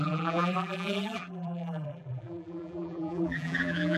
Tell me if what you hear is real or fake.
fake